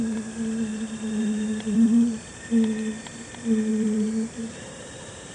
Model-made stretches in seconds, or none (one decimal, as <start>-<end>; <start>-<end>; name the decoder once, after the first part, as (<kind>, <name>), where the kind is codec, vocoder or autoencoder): 0.7-2.4 (vocoder, BigVGAN v2); 3.7-5.3